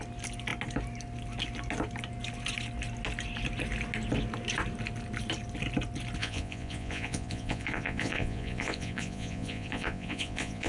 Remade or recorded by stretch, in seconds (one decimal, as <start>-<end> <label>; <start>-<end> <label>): 0.0-6.2 recorded; 6.2-10.7 remade